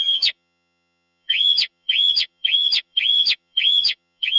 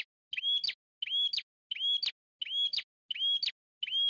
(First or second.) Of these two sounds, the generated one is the first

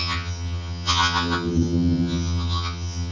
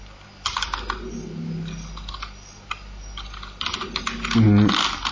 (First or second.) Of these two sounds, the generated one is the first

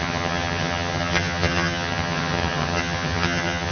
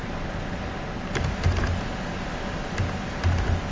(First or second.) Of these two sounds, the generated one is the first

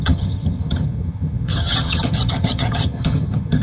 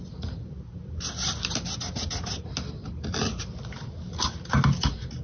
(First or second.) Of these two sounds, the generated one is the first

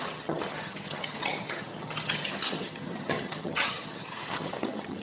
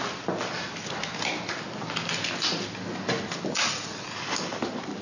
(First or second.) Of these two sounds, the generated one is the first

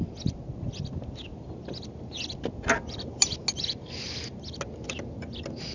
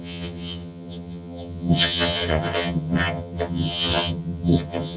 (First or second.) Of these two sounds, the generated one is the second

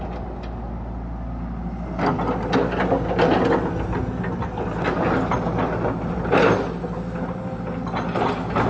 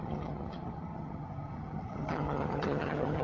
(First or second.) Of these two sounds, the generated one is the second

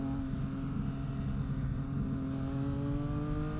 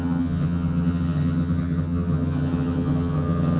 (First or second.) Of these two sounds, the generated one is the second